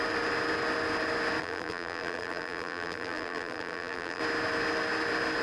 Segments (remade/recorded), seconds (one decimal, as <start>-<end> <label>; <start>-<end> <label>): 0.0-1.4 recorded; 1.4-4.2 remade; 4.2-5.4 recorded